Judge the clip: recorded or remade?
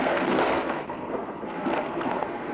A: remade